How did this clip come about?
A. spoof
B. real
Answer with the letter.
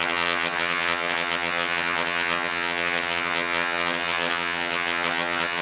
A